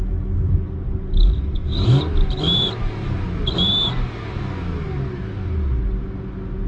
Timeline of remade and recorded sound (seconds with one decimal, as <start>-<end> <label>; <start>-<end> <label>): 0.0-6.7 recorded